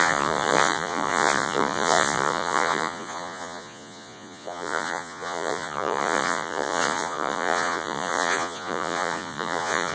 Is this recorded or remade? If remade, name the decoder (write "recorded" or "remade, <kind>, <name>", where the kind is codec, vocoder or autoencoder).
remade, vocoder, Vocos